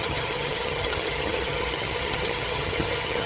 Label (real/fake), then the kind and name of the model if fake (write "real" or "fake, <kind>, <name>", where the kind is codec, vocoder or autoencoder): fake, vocoder, HiFi-GAN